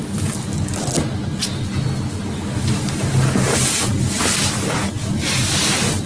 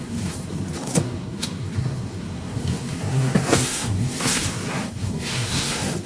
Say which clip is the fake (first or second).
second